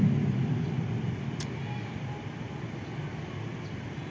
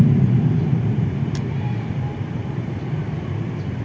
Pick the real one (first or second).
first